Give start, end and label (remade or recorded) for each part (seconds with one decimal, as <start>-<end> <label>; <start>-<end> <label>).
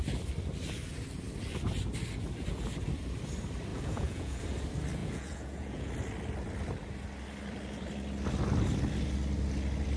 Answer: 0.0-3.7 recorded; 3.7-4.4 remade; 4.4-5.0 recorded; 5.0-5.9 remade; 5.9-10.0 recorded